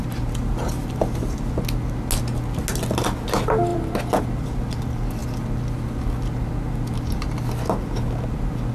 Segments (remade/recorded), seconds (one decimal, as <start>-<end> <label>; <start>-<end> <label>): 0.0-8.7 recorded